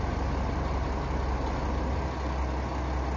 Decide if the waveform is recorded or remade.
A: recorded